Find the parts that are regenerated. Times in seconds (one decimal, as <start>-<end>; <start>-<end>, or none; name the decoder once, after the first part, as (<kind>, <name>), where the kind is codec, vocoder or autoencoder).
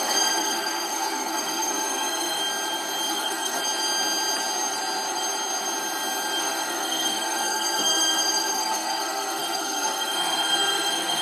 0.0-2.4 (codec, SNAC); 3.1-3.6; 6.4-11.2